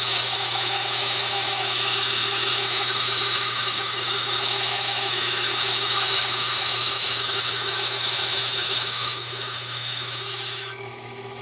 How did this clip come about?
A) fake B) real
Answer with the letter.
A